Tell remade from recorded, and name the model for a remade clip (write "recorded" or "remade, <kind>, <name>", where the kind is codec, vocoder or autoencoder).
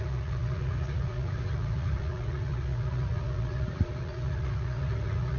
remade, vocoder, Vocos